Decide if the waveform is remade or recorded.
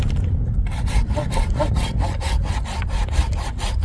recorded